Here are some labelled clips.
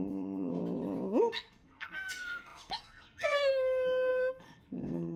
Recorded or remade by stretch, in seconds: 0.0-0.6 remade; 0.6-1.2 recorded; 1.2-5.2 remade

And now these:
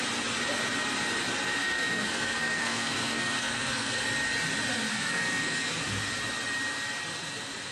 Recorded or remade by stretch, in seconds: 0.0-1.6 recorded; 1.6-4.0 remade; 4.0-4.9 recorded; 4.9-5.8 remade; 5.8-7.7 recorded